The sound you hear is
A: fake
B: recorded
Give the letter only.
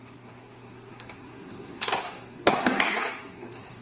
A